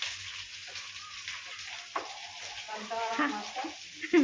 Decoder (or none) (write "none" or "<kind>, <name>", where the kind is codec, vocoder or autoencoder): none